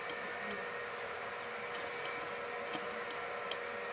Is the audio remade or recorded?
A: recorded